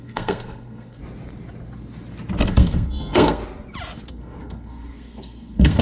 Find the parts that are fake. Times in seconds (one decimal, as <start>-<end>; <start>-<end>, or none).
0.0-1.0; 2.4-3.4; 4.1-5.8